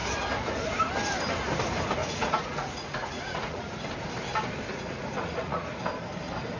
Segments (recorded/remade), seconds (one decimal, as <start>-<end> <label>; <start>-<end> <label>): 0.0-2.0 recorded; 2.0-3.8 remade; 3.8-4.7 recorded; 4.7-5.8 remade; 5.8-6.6 recorded